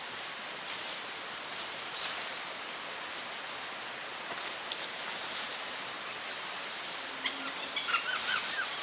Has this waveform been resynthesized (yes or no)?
no